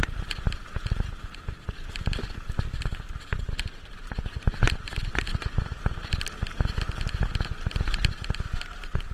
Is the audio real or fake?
real